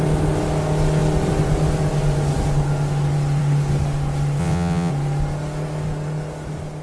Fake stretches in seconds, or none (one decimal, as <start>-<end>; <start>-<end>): 4.4-4.9